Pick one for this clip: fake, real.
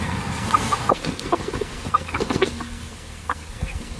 fake